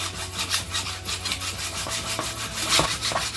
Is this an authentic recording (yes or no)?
yes